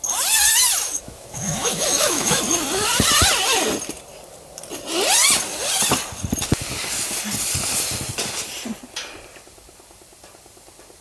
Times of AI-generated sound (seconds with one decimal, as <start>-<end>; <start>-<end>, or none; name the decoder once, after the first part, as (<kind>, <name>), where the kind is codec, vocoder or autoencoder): 0.9-2.4 (autoencoder, DAC-VAE)